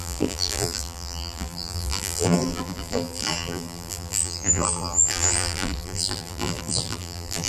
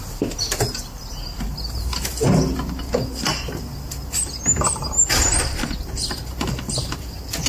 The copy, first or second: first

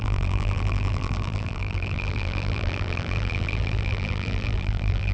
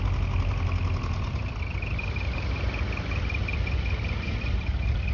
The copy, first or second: first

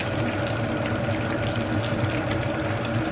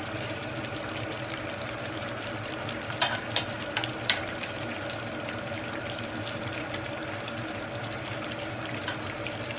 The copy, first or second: second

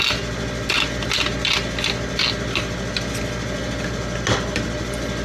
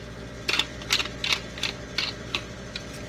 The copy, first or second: second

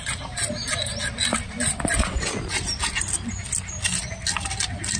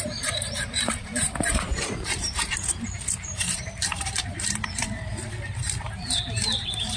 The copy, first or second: second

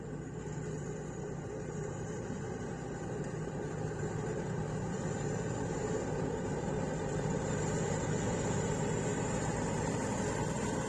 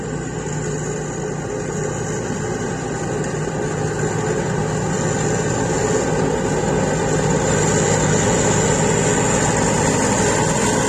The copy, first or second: first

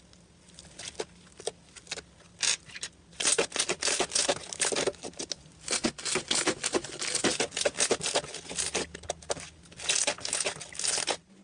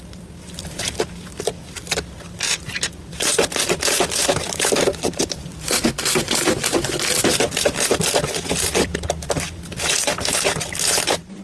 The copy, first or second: second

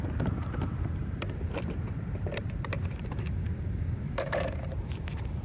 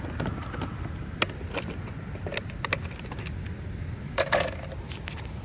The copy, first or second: first